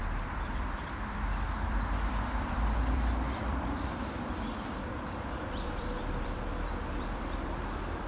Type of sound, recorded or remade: remade